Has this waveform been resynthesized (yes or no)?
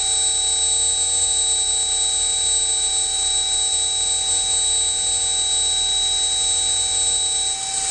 no